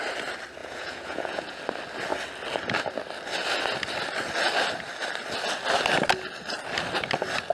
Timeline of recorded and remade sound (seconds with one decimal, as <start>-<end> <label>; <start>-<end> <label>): 0.0-0.6 recorded; 0.6-1.6 remade; 1.6-7.5 recorded